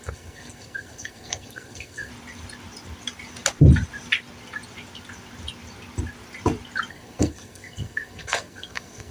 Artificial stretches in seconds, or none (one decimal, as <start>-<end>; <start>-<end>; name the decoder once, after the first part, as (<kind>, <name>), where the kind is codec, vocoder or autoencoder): 0.0-2.1 (codec, SNAC); 6.9-9.1